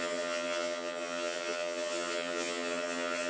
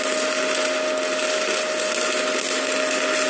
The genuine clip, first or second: second